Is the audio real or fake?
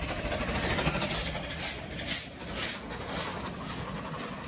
real